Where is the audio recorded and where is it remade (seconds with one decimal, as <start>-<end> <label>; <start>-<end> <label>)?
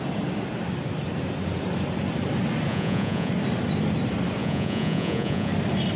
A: 0.0-2.7 recorded; 2.7-3.3 remade; 3.3-4.4 recorded; 4.4-5.5 remade; 5.5-6.0 recorded